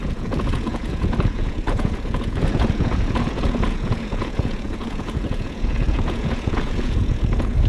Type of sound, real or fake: fake